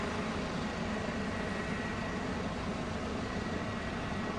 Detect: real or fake real